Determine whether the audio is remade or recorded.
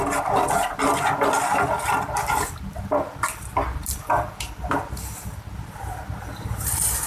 recorded